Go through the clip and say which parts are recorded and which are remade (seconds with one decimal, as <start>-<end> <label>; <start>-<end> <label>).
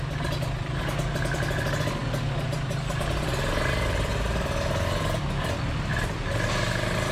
0.0-7.1 recorded